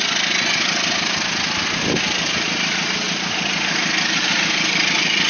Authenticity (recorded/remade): recorded